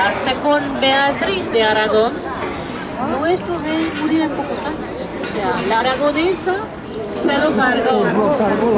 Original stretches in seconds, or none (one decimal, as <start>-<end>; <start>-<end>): 0.0-8.8